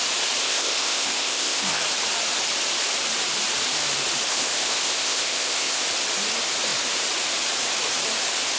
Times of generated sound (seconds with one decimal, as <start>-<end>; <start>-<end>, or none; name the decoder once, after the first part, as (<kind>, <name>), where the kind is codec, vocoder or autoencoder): 0.4-1.8 (codec, ZipCodec); 4.3-5.8